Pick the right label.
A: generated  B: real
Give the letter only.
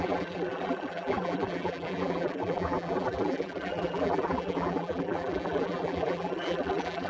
A